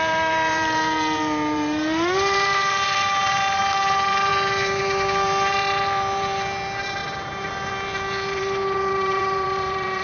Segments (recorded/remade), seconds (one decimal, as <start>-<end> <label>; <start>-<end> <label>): 0.0-10.0 remade